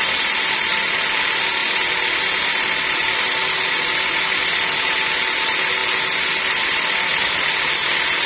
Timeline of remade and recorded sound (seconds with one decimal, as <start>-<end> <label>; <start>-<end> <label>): 0.0-8.3 recorded